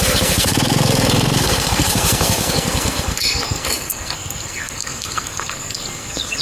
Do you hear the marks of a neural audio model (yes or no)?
yes